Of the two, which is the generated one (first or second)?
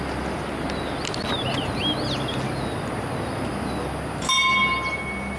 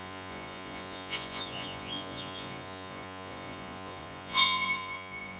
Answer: second